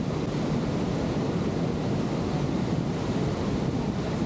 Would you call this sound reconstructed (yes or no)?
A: no